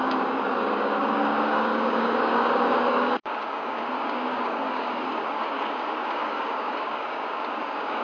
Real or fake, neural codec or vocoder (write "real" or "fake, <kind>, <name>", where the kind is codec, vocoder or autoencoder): fake, codec, DAC